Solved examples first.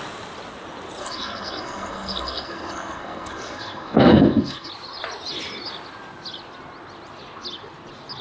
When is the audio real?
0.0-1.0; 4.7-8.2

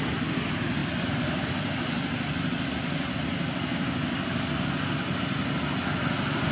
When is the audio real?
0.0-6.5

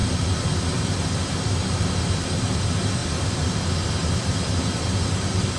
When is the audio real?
0.0-5.6